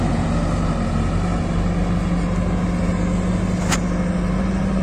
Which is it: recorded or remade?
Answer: recorded